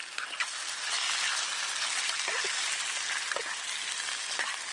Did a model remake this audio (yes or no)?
no